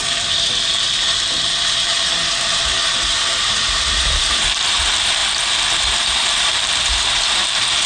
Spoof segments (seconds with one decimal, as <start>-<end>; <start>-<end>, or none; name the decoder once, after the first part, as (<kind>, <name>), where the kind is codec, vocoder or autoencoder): 0.0-5.2 (vocoder, BigVGAN v2); 5.8-7.9